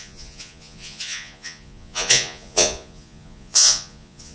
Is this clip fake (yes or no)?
yes